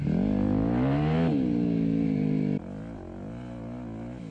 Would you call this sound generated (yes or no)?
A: no